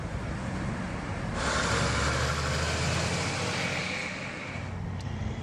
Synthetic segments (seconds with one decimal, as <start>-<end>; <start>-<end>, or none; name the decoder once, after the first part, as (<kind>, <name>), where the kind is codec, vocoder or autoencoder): none